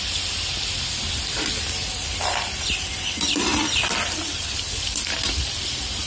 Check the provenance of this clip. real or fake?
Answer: real